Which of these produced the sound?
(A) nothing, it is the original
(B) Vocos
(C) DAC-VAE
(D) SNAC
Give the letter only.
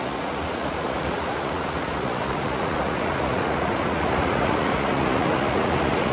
B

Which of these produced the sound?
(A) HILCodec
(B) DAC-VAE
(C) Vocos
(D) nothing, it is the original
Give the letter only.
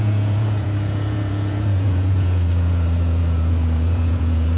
C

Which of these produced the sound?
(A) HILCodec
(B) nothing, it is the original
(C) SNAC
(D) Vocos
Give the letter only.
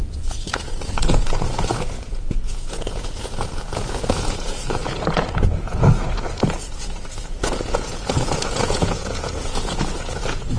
D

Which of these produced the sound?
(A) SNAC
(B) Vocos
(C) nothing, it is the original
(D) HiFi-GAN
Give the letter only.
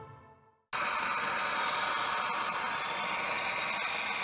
C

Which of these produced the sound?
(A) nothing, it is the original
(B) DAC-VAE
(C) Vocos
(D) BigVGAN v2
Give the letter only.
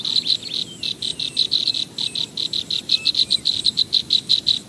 A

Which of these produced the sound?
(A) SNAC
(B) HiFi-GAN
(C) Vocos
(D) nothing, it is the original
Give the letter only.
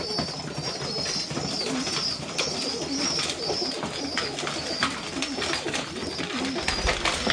D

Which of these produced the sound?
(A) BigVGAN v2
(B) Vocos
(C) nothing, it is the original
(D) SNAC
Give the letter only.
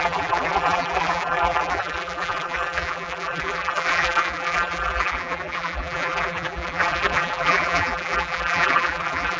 A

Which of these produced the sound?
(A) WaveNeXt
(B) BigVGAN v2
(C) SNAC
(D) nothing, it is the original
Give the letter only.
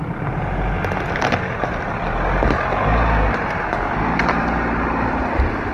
D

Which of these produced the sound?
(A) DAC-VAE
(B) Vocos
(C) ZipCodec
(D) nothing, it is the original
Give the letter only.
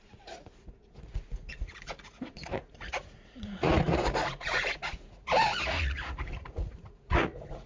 B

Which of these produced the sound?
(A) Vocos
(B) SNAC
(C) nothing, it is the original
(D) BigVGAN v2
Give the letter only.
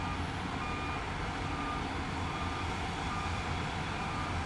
C